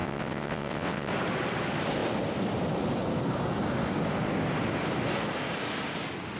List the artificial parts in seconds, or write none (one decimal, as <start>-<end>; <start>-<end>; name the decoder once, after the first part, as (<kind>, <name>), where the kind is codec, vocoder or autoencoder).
0.0-1.1 (vocoder, WaveNeXt)